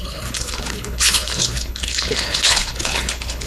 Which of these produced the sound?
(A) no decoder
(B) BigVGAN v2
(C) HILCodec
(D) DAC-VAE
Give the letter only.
C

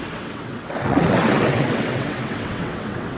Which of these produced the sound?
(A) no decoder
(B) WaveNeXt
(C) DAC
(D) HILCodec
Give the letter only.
B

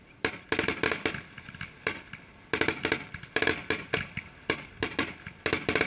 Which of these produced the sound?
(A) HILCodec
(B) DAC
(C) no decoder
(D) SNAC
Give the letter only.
C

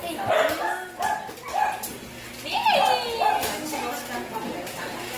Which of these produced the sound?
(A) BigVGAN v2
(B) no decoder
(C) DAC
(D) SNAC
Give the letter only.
B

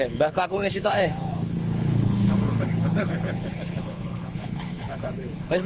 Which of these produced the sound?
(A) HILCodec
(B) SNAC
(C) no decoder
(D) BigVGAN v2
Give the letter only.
A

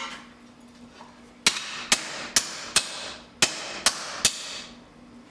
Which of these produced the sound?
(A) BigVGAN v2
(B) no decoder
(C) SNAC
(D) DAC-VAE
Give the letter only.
B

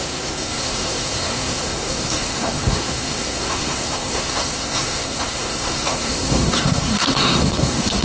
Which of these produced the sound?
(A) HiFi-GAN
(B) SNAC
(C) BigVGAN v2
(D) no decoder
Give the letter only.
B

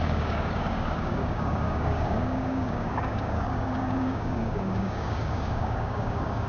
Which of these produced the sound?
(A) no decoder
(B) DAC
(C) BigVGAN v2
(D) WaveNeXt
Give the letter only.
B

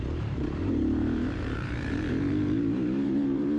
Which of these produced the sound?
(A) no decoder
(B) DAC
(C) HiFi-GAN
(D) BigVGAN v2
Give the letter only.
D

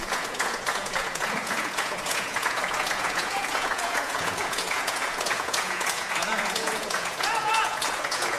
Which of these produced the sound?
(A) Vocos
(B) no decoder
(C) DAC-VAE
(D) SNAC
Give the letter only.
A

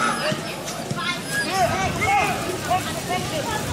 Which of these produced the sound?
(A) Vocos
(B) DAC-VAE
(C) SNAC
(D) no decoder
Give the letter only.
D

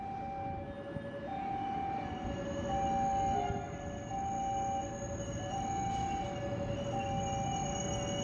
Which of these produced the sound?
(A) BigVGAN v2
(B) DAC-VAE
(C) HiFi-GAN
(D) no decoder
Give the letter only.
D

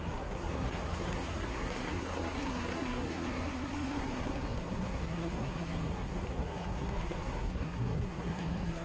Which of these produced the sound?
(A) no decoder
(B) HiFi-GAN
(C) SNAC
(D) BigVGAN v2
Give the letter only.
C